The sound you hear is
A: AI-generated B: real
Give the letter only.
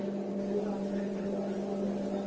B